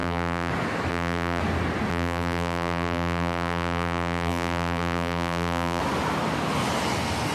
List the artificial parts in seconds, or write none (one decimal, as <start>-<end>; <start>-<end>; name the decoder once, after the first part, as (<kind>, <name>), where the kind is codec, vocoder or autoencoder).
0.0-0.5 (vocoder, BigVGAN v2); 0.9-1.4; 1.9-5.8